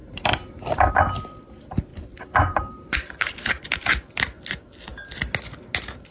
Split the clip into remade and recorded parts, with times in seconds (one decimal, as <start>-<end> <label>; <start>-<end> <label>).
0.0-0.9 remade; 0.9-1.9 recorded; 1.9-3.5 remade; 3.5-6.1 recorded

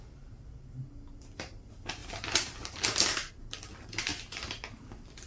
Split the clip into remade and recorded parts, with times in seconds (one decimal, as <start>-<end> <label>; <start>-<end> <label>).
0.0-2.0 recorded; 2.0-3.3 remade; 3.3-5.3 recorded